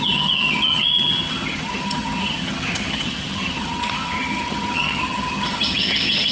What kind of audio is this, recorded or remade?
remade